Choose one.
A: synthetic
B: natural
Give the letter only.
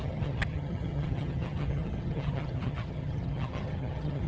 A